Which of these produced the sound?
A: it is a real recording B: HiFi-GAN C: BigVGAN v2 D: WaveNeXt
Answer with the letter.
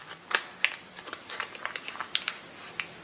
A